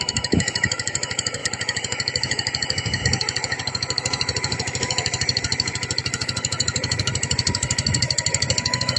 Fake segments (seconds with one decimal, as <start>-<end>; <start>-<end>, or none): 0.0-9.0